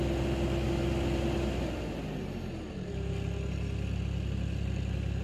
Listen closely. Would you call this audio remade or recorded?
recorded